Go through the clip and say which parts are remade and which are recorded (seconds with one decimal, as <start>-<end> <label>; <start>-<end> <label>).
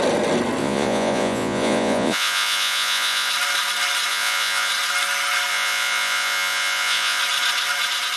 0.0-0.6 recorded; 0.6-3.3 remade; 3.3-4.1 recorded; 4.1-4.7 remade; 4.7-5.5 recorded; 5.5-7.2 remade; 7.2-8.2 recorded